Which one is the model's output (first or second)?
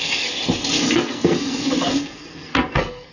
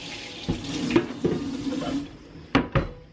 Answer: first